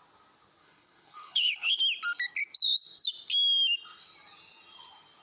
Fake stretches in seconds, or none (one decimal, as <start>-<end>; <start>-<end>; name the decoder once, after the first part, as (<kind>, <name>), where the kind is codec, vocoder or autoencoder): 0.6-1.8 (codec, HILCodec)